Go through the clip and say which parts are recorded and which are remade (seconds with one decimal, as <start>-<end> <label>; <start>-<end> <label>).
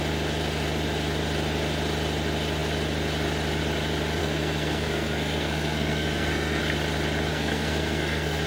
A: 0.0-4.2 recorded; 4.2-6.6 remade; 6.6-7.3 recorded; 7.3-8.5 remade